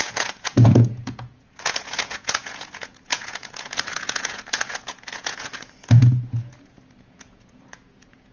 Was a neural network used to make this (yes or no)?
yes